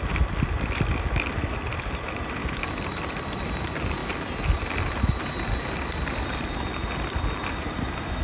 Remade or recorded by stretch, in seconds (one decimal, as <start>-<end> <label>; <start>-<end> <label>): 0.0-2.4 remade; 2.4-3.0 recorded; 3.0-4.0 remade; 4.0-7.6 recorded; 7.6-8.2 remade

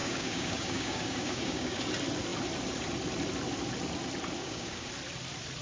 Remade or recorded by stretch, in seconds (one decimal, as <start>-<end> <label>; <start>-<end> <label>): 0.0-1.8 remade; 1.8-4.4 recorded; 4.4-4.9 remade; 4.9-5.6 recorded

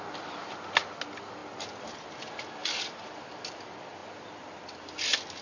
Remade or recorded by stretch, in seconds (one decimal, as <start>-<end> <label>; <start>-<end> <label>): 0.0-5.4 recorded